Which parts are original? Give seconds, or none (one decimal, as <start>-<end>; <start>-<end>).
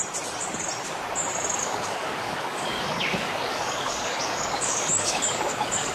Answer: 0.0-1.6